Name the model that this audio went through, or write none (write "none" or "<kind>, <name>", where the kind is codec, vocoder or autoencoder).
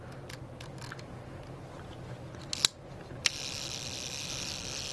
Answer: none